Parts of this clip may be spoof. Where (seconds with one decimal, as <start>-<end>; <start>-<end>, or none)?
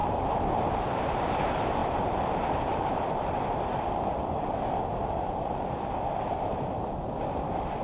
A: 0.0-0.5; 1.8-4.3